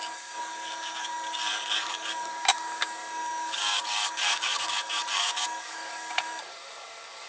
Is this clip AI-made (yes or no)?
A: yes